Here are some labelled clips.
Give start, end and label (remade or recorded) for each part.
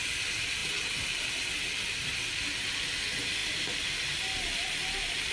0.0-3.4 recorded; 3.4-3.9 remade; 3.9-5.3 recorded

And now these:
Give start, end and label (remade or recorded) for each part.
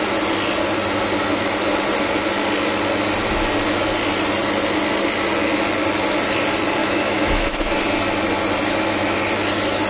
0.0-6.8 recorded; 6.8-7.8 remade; 7.8-9.9 recorded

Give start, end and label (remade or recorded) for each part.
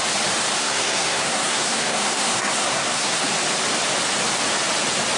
0.0-0.6 recorded; 0.6-3.2 remade; 3.2-5.2 recorded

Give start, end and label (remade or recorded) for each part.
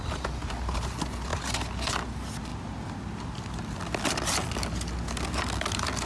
0.0-6.1 recorded